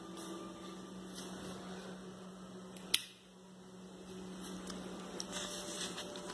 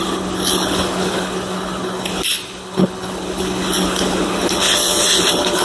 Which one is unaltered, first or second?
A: first